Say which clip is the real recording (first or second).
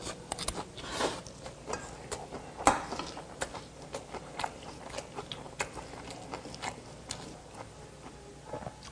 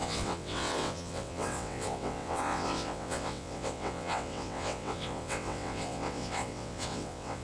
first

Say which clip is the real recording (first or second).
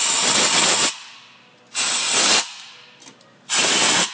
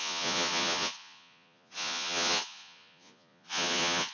first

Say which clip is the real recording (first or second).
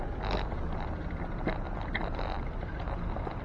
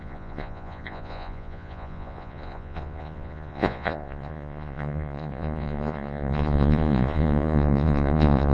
first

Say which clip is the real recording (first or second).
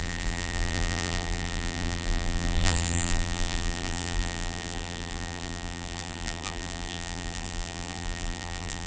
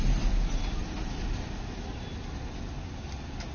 second